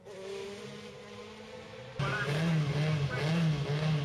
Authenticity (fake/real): real